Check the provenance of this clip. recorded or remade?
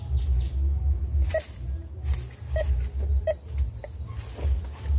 recorded